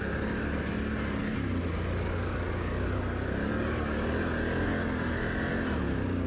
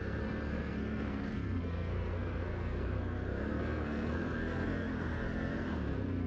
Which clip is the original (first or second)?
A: first